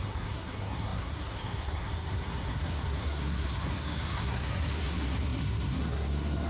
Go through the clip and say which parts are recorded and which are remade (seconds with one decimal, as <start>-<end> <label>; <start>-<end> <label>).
0.0-6.5 remade

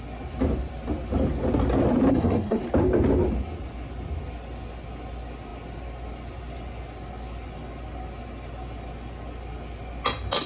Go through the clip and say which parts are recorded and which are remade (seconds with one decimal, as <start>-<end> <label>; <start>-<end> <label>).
0.0-2.1 recorded; 2.1-2.6 remade; 2.6-10.5 recorded

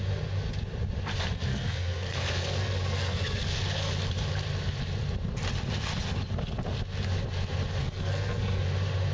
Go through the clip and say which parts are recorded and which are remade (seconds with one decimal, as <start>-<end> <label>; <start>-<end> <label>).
0.0-1.5 recorded; 1.5-3.9 remade; 3.9-7.8 recorded; 7.8-8.6 remade; 8.6-9.1 recorded